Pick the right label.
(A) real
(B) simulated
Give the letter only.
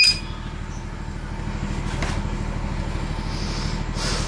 A